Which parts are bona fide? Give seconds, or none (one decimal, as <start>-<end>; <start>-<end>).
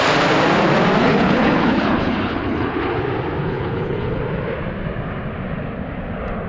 0.0-1.0; 3.0-3.4; 4.2-6.5